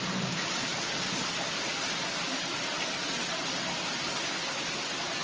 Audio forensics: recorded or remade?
recorded